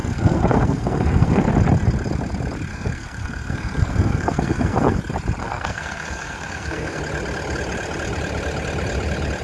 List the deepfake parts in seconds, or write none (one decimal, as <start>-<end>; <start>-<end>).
0.0-1.5; 2.7-5.0; 5.4-7.0

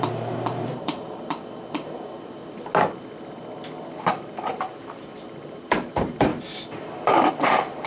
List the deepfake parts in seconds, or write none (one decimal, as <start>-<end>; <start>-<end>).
0.0-2.4; 4.1-6.3; 7.3-7.9